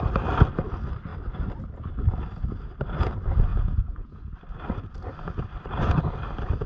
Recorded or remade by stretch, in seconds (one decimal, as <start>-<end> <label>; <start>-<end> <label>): 0.0-3.5 recorded; 3.5-4.2 remade; 4.2-6.7 recorded